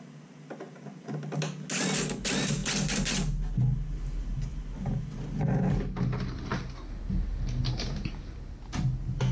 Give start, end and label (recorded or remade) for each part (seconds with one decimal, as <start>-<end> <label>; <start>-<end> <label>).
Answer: 0.0-9.3 recorded